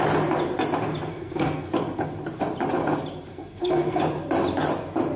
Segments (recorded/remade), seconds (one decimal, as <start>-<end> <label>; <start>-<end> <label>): 0.0-1.1 recorded; 1.1-1.7 remade; 1.7-3.3 recorded; 3.3-4.0 remade; 4.0-5.2 recorded